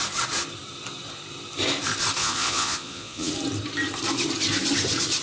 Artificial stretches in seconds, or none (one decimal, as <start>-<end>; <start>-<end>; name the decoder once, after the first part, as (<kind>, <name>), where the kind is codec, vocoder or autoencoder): 2.2-3.3 (vocoder, Vocos)